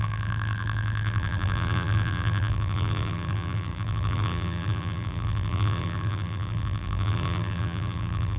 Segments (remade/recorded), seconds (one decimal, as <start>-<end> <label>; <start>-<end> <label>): 0.0-8.4 remade